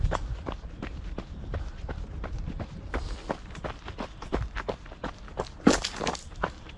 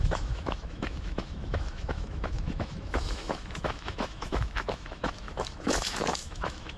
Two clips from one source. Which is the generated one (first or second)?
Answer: second